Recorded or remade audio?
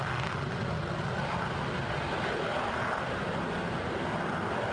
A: recorded